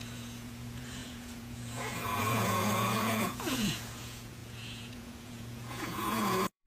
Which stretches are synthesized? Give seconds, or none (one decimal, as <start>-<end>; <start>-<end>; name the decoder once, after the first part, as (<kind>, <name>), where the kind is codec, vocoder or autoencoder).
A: 0.0-6.7 (vocoder, Vocos)